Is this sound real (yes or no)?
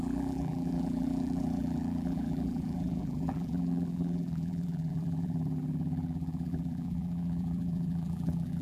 no